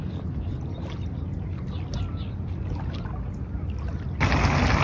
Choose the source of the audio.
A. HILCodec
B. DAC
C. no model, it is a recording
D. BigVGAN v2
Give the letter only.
C